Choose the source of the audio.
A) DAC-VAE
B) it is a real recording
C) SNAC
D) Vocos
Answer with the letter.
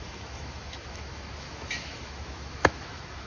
A